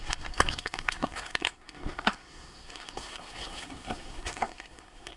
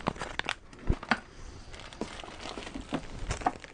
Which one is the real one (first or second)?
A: second